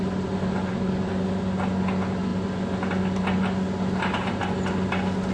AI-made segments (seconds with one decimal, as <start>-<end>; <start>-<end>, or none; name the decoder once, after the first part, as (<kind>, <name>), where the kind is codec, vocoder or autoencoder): none